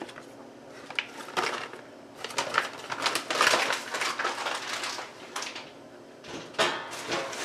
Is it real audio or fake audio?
real